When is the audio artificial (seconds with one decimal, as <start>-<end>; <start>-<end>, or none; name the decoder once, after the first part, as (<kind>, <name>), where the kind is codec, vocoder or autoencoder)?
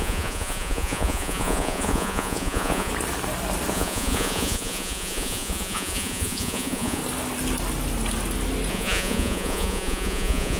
0.0-2.9 (vocoder, Vocos); 3.7-7.0; 8.7-10.6